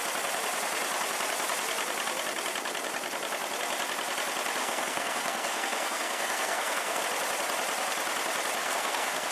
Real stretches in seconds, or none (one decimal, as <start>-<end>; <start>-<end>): 0.0-4.6; 7.0-8.6